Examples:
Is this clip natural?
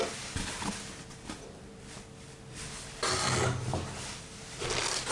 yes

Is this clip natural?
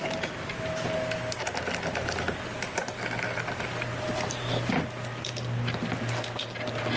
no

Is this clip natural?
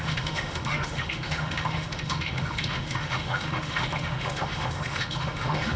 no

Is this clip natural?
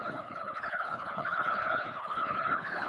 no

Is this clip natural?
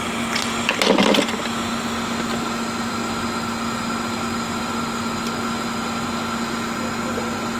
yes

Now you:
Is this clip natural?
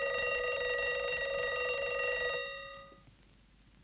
yes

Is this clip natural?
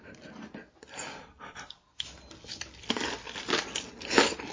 yes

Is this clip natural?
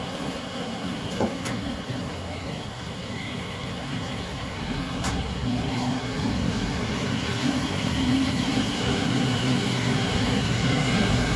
no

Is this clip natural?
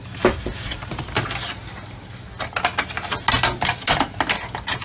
yes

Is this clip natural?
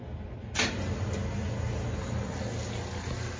yes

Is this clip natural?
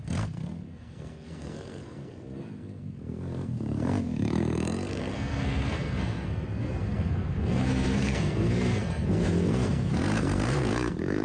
no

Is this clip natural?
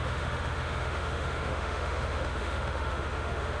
no